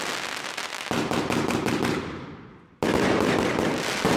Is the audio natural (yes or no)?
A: yes